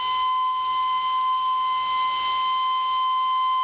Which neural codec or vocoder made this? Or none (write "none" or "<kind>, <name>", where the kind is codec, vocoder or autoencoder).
none